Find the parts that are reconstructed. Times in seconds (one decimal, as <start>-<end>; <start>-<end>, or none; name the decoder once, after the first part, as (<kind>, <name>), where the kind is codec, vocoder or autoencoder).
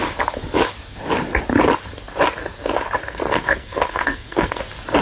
3.0-4.6 (codec, SNAC)